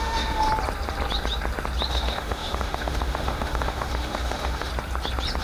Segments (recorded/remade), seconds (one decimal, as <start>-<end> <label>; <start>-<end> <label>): 0.0-0.5 remade; 0.5-1.9 recorded; 1.9-4.7 remade; 4.7-5.4 recorded

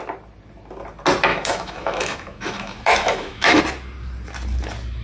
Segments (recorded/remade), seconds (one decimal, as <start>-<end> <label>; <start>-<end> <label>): 0.0-1.3 recorded; 1.3-3.6 remade; 3.6-5.0 recorded

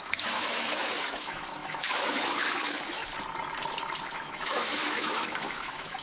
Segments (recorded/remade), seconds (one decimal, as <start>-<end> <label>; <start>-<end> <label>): 0.0-3.0 remade; 3.0-4.0 recorded; 4.0-6.0 remade

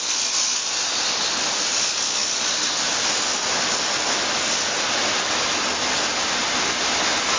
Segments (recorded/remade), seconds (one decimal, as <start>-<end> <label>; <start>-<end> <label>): 0.0-7.4 recorded

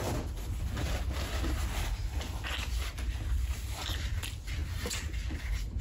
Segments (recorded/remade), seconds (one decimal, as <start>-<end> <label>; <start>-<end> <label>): 0.0-5.8 recorded

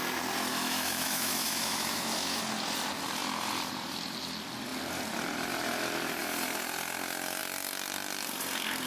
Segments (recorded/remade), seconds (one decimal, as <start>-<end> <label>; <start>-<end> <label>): 0.0-0.5 recorded; 0.5-2.4 remade; 2.4-8.9 recorded